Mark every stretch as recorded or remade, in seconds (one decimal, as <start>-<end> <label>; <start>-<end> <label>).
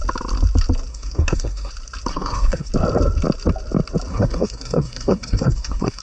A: 0.0-0.9 recorded; 0.9-1.7 remade; 1.7-2.1 recorded; 2.1-2.7 remade; 2.7-4.1 recorded; 4.1-6.0 remade